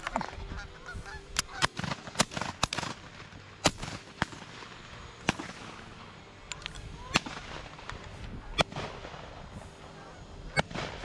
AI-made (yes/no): no